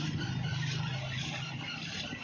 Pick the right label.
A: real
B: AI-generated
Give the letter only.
A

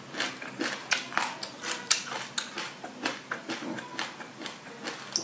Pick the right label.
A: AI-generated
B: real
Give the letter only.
B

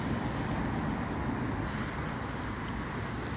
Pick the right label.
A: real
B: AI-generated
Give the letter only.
A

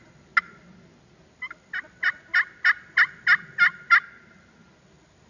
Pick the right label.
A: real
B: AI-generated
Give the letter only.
A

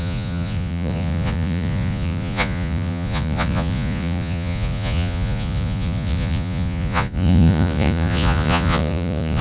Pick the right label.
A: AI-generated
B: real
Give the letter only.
A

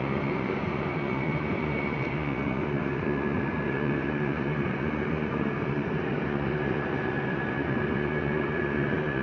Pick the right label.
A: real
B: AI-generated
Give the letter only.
B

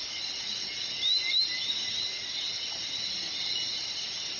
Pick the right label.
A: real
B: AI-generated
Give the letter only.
A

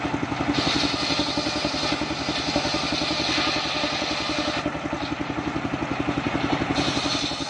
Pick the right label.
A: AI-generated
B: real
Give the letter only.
B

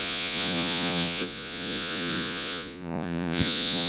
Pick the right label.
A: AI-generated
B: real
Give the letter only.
A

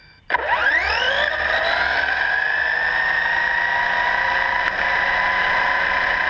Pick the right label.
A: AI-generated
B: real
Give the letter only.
B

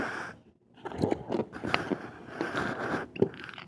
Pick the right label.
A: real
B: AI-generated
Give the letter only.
A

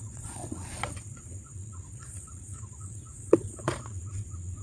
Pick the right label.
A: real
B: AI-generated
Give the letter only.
B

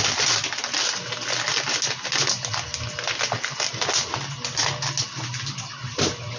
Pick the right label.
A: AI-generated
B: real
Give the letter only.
B